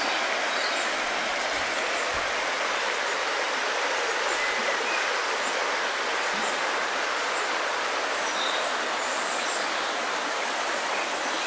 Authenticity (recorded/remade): recorded